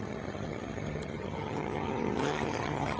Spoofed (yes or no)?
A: yes